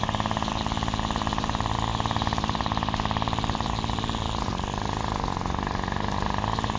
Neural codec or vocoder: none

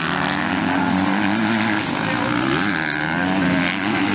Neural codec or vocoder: none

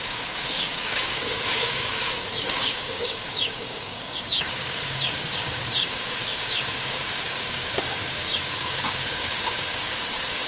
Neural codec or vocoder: codec, DAC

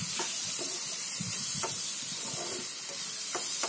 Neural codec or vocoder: none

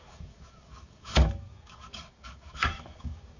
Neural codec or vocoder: codec, DAC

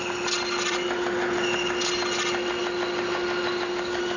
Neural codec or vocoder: none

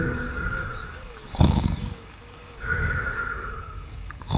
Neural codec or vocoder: codec, DAC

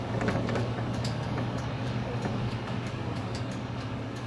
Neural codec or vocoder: codec, DAC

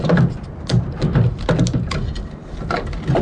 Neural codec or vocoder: none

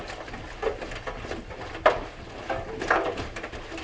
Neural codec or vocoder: none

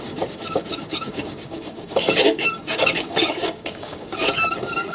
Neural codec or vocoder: codec, DAC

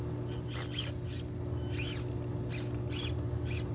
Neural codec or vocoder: none